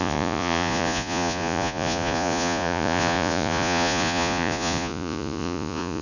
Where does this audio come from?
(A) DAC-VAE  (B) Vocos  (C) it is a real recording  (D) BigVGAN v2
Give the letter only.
B